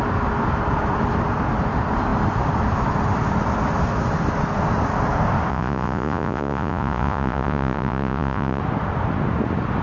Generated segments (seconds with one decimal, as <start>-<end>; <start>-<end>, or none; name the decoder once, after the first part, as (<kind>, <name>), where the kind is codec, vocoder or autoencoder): 5.5-8.6 (vocoder, Vocos)